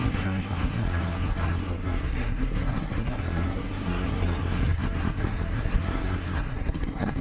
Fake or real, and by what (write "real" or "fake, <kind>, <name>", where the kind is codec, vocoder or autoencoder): fake, codec, SNAC